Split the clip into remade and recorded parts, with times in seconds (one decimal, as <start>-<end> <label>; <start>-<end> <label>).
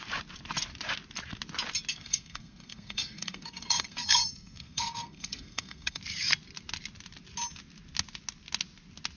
0.0-1.9 recorded; 1.9-6.0 remade; 6.0-9.2 recorded